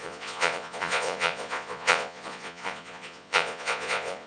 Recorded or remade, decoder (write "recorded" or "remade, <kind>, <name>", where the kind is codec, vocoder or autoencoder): remade, vocoder, Vocos